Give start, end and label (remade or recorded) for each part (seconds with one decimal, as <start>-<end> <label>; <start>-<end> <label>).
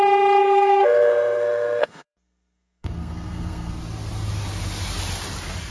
0.0-0.4 recorded; 0.4-3.8 remade; 3.8-5.7 recorded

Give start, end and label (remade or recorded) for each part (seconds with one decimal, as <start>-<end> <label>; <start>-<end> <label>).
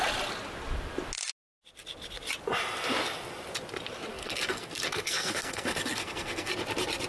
0.0-4.1 recorded; 4.1-6.5 remade; 6.5-7.1 recorded